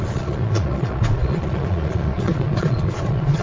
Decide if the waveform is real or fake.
fake